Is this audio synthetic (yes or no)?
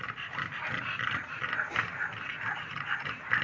no